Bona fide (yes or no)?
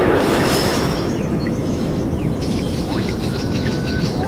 no